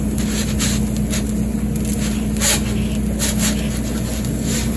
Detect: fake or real real